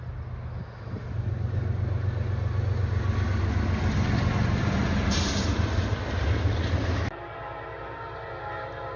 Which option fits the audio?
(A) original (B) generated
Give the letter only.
A